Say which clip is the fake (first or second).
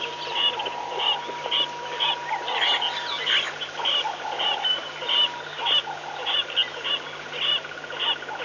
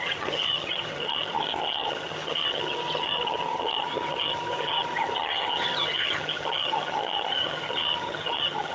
second